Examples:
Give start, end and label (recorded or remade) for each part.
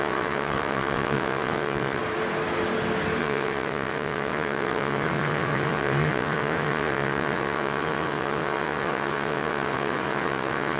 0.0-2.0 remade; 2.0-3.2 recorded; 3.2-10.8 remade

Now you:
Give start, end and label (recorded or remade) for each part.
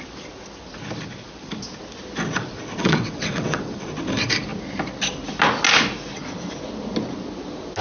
0.0-2.8 recorded; 2.8-3.9 remade; 3.9-7.8 recorded